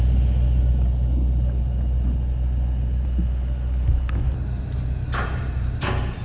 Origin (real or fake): real